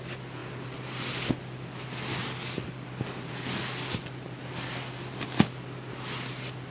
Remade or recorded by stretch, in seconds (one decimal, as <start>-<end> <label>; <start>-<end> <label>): 0.0-6.7 recorded